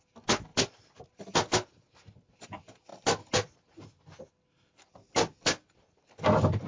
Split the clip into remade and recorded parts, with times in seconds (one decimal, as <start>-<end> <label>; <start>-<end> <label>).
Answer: 0.0-6.7 recorded